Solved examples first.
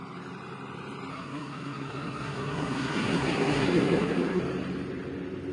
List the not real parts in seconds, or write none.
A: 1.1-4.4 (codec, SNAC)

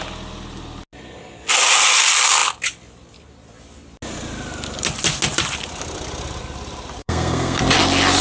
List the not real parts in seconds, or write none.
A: 7.0-7.6 (codec, SNAC)

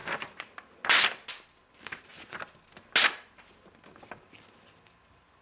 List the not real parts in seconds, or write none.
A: none

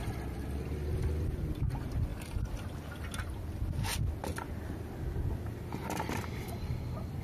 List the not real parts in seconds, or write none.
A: none

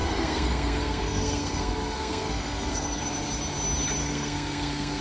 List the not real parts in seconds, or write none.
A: 0.0-3.0 (codec, SNAC); 4.0-5.0